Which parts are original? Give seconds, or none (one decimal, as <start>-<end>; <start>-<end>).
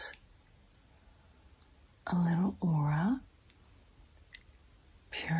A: 0.0-5.4